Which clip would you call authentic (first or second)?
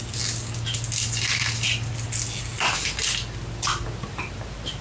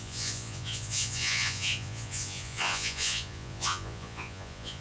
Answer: first